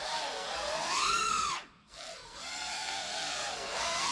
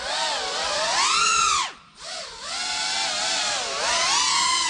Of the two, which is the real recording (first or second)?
second